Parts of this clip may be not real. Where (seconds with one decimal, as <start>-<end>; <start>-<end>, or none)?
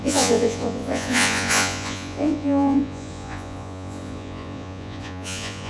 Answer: 0.0-5.7